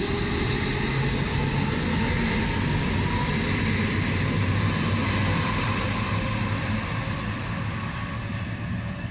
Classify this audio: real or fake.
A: real